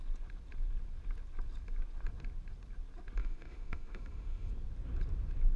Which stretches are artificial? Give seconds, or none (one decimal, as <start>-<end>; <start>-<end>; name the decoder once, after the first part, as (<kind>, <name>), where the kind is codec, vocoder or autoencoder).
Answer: 3.2-4.5 (autoencoder, DAC-VAE)